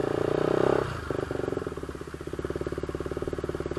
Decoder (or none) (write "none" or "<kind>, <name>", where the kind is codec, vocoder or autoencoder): none